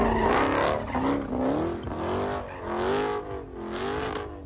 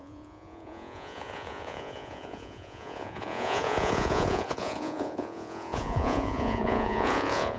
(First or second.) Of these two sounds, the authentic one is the first